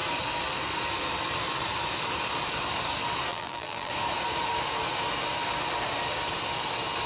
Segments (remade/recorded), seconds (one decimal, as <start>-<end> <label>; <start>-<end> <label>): 0.0-3.3 recorded; 3.3-3.9 remade; 3.9-7.1 recorded